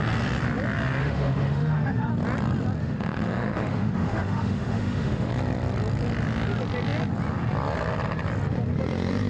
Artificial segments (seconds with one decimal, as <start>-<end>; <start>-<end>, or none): 1.0-2.1; 2.8-5.3